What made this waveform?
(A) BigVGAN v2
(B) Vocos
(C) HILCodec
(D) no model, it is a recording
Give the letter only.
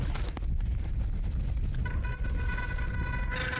D